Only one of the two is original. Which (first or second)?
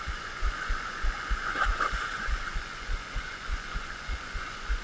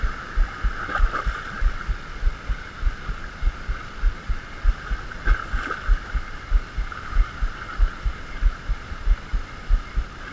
second